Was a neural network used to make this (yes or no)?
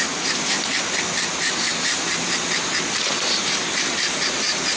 no